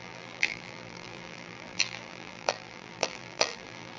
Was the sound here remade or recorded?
remade